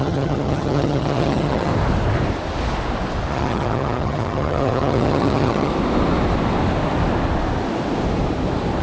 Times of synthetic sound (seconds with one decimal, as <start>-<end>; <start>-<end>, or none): 0.0-1.7; 3.3-5.7